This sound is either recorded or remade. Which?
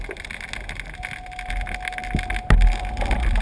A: recorded